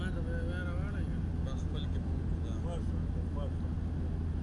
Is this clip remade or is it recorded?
recorded